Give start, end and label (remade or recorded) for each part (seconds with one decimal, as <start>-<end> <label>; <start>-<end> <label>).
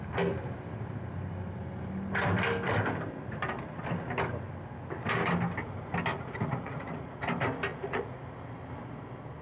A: 0.0-6.1 recorded; 6.1-7.2 remade; 7.2-7.7 recorded; 7.7-8.2 remade; 8.2-9.4 recorded